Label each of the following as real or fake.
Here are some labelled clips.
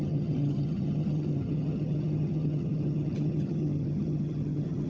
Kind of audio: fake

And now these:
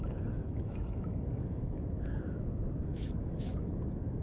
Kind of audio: fake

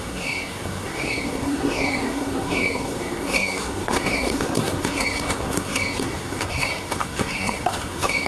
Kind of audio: fake